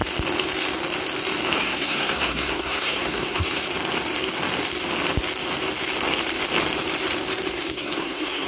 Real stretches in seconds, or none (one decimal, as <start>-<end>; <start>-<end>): 0.0-1.6; 3.6-7.5